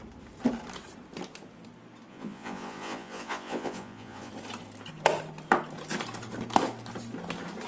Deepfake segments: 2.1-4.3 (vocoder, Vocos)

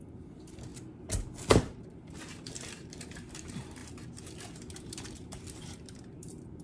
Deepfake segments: 0.0-0.7 (vocoder, BigVGAN v2); 1.8-3.8; 4.8-6.6

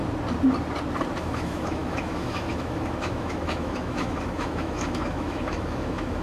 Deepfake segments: 1.2-6.2 (autoencoder, DAC-VAE)

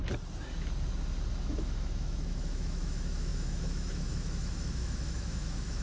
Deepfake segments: 1.4-5.8 (autoencoder, DAC-VAE)

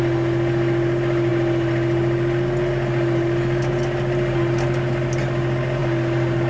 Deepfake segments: none

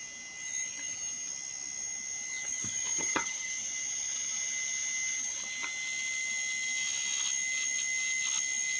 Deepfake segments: 2.9-3.5 (vocoder, HiFi-GAN)

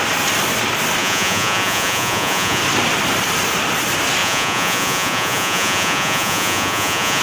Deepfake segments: 1.0-2.6 (vocoder, Vocos); 4.2-7.2

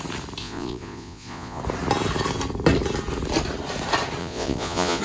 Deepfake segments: 0.4-1.6 (vocoder, Vocos); 4.2-5.0